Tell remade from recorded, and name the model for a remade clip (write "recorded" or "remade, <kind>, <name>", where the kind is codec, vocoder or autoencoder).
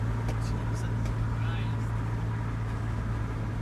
recorded